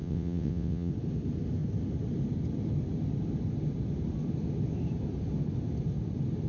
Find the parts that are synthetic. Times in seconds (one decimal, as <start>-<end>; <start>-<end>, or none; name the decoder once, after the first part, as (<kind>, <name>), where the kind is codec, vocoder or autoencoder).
0.0-0.9 (vocoder, WaveNeXt)